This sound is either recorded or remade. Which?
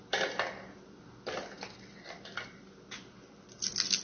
recorded